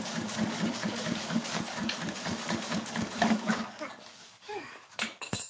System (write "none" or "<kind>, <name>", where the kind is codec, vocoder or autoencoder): codec, DAC